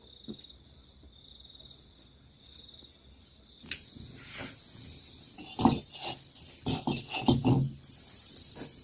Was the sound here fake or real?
real